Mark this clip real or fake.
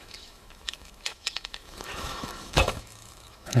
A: fake